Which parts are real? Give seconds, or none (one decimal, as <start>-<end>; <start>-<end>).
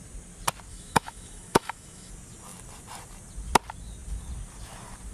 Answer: 0.0-0.7; 2.1-5.1